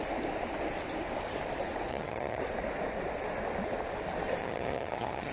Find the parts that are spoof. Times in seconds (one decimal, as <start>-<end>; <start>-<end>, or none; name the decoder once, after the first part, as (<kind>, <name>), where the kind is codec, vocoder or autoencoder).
1.9-2.4 (vocoder, HiFi-GAN); 4.4-5.3